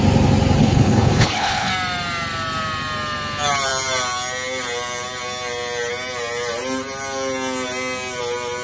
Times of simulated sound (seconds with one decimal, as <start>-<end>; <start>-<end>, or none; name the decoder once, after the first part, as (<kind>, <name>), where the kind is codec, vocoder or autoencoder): 0.6-1.7 (codec, HILCodec)